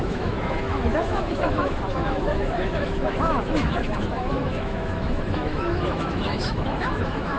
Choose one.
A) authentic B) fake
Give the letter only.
B